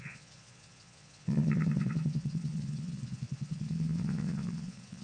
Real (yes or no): no